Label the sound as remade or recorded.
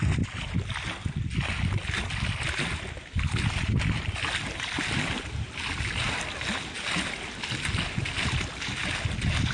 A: recorded